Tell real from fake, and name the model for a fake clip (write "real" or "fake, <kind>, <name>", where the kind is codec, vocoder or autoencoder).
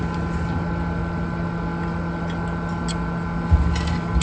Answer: real